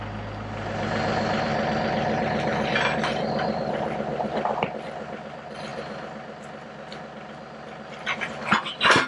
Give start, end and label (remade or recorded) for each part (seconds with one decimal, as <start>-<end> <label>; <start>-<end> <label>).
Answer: 0.0-9.1 recorded